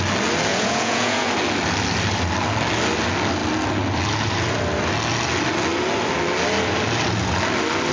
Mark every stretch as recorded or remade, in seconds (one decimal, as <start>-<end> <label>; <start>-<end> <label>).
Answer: 0.0-0.5 recorded; 0.5-1.3 remade; 1.3-7.9 recorded